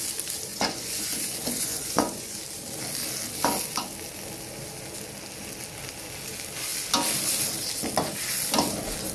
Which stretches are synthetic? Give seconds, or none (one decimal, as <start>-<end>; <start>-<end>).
0.5-2.4